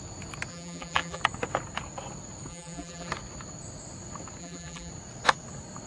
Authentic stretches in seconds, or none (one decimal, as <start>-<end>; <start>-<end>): 0.0-0.5; 1.2-2.5; 3.1-4.4; 4.9-5.9